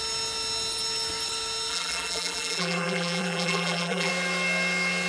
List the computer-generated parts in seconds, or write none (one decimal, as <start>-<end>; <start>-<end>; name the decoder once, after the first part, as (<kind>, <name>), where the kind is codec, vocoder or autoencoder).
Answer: 1.7-4.1 (vocoder, BigVGAN v2)